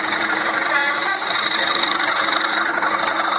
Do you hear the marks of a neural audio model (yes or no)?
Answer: yes